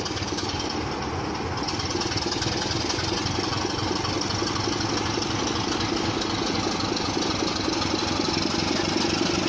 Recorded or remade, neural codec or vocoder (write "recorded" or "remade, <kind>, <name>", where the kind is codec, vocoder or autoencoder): recorded